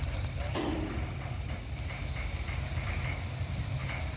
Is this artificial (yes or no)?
no